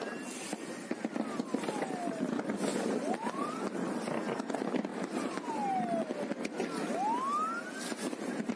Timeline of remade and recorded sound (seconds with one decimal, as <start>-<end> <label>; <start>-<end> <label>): 0.0-8.6 recorded